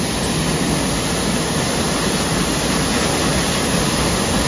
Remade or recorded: recorded